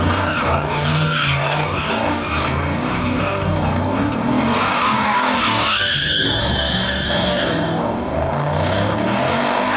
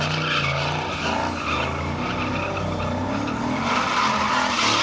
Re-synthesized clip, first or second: first